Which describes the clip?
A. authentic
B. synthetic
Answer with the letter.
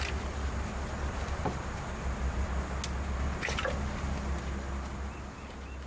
A